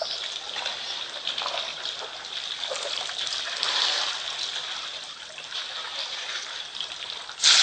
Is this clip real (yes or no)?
no